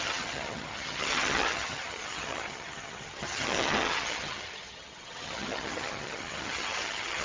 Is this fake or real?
fake